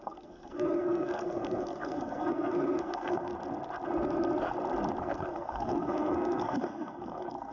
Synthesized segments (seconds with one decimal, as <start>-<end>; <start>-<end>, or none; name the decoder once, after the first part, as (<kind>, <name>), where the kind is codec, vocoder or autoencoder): 0.0-3.3 (codec, SNAC); 5.0-7.5